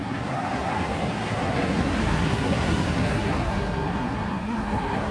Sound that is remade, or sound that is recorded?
remade